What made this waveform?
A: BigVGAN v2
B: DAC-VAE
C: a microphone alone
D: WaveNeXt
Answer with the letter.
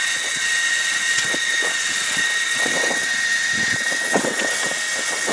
D